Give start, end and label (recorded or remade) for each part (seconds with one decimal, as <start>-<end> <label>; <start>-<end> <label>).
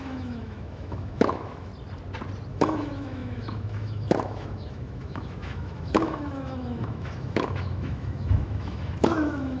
0.0-1.7 remade; 1.7-2.5 recorded; 2.5-9.6 remade